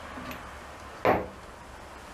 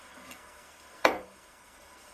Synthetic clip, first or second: second